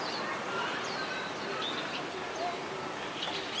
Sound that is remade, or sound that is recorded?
recorded